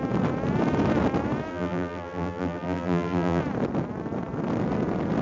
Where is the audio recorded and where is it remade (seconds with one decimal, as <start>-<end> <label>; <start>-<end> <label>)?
0.0-1.5 recorded; 1.5-3.4 remade; 3.4-5.2 recorded